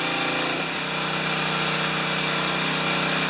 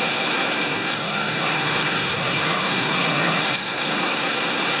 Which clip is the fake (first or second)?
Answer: second